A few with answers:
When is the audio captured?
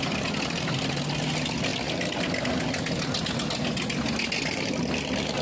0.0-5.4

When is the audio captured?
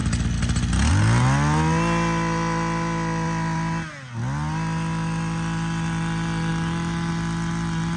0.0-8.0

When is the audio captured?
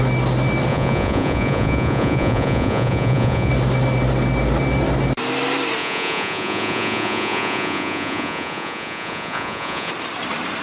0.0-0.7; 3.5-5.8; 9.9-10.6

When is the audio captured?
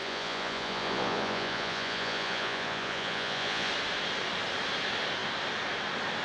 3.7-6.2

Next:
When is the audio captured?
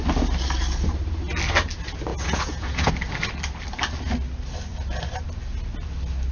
0.0-2.1; 2.9-6.3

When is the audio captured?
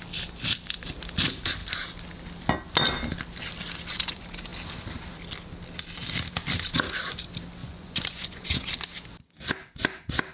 0.0-7.6; 8.7-10.3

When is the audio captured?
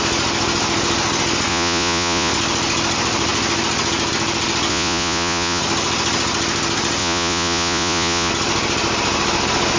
0.0-1.5; 2.3-4.7; 5.6-7.0; 8.3-9.8